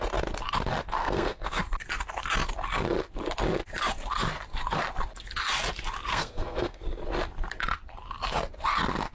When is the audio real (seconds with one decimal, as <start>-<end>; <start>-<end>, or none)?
0.0-1.0; 1.6-6.1; 6.8-9.1